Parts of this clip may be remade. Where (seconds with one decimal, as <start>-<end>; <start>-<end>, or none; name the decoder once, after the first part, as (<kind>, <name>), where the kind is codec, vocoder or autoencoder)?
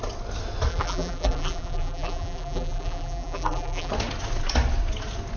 0.7-3.9 (vocoder, BigVGAN v2)